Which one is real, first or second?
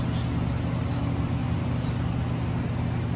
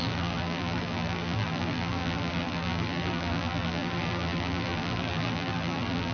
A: first